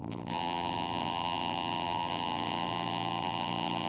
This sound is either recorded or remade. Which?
remade